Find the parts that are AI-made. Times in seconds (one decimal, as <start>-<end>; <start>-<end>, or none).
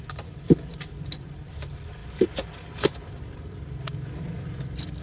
none